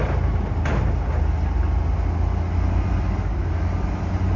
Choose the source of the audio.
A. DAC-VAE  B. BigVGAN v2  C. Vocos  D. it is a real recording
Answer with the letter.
D